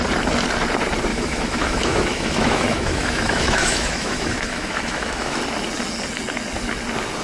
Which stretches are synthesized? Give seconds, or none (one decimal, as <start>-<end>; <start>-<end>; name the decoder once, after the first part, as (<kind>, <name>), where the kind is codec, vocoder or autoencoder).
1.1-5.4 (autoencoder, DAC-VAE)